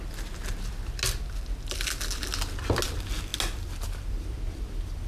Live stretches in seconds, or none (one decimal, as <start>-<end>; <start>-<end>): 0.0-5.1